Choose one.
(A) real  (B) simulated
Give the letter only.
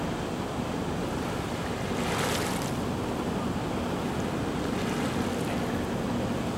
A